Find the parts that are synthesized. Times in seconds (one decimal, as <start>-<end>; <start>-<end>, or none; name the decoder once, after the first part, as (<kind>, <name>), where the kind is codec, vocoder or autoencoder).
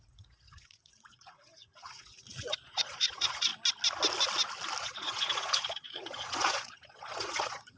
0.0-3.5 (vocoder, Vocos); 4.8-7.8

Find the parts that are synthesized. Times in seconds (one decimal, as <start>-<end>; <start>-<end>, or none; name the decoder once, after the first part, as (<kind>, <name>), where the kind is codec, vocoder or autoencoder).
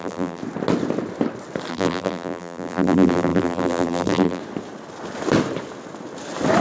0.0-0.4 (vocoder, BigVGAN v2); 1.7-4.4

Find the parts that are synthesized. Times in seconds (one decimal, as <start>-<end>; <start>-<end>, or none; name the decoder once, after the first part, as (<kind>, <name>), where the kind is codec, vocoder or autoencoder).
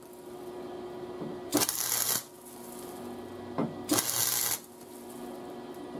none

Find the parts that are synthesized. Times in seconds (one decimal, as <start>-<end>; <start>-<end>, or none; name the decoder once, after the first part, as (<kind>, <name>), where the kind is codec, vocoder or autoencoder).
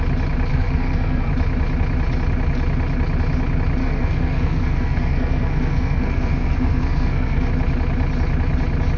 0.5-1.3 (codec, SNAC); 3.8-7.5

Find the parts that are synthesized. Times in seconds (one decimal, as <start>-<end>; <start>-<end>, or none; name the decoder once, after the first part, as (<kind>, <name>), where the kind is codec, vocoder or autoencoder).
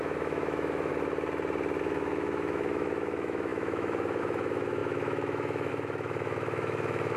0.0-0.9 (autoencoder, DAC-VAE); 1.8-7.2